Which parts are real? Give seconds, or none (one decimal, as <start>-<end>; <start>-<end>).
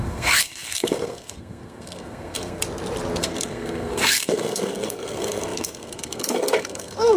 2.6-3.2